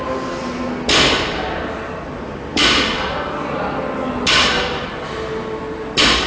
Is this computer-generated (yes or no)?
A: no